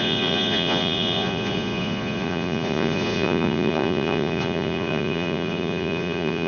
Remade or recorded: remade